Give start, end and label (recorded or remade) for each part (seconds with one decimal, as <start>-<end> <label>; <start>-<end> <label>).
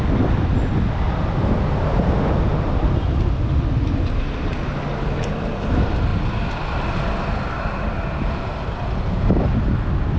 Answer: 0.0-10.2 recorded